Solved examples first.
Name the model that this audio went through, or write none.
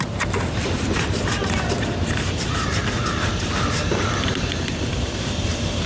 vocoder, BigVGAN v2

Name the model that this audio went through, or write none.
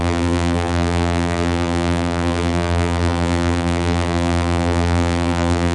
vocoder, BigVGAN v2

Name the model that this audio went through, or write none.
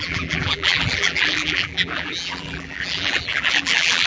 vocoder, BigVGAN v2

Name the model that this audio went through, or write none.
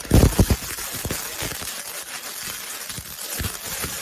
none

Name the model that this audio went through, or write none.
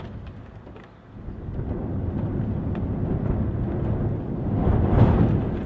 none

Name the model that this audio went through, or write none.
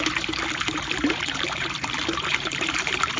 vocoder, BigVGAN v2